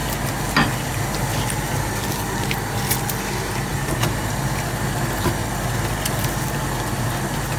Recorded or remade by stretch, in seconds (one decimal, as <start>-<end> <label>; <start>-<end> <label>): 0.0-7.6 recorded